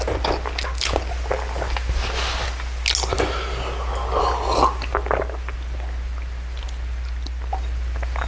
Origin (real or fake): real